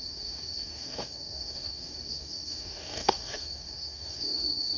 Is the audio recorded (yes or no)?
no